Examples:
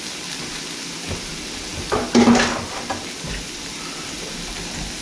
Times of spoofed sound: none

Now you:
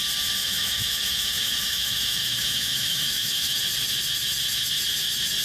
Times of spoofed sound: 0.4-3.6

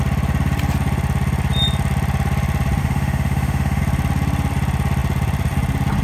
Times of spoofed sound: 2.8-3.8

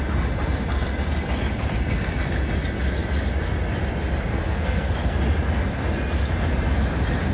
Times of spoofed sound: 4.3-5.2